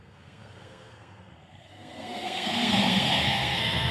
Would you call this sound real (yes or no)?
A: no